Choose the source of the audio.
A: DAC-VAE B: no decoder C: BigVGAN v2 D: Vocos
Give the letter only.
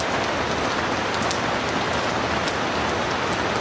B